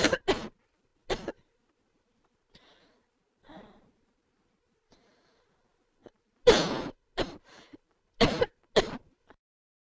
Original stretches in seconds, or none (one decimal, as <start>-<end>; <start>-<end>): 0.0-9.9